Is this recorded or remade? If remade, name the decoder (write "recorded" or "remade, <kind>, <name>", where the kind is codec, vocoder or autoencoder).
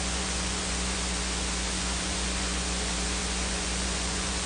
remade, vocoder, Vocos